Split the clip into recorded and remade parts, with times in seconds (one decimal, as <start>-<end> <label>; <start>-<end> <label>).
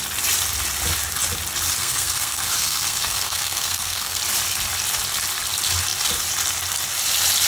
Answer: 0.0-1.8 recorded; 1.8-4.2 remade; 4.2-7.5 recorded